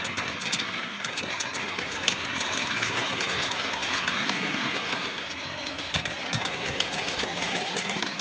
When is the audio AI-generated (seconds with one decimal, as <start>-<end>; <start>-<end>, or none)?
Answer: 0.0-8.2